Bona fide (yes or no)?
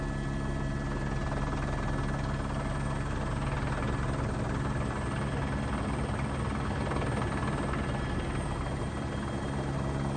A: yes